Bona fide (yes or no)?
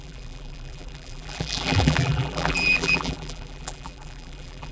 no